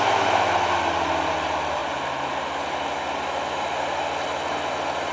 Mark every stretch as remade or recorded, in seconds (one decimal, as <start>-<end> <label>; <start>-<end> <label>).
0.0-5.1 recorded